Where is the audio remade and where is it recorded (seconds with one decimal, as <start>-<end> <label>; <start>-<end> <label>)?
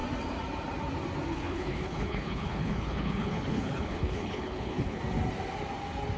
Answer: 0.0-1.3 recorded; 1.3-5.0 remade; 5.0-6.2 recorded